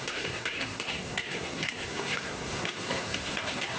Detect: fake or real fake